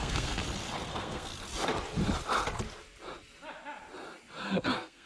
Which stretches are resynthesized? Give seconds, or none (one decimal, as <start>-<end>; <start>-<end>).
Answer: 0.0-0.4; 0.9-1.3; 4.4-5.1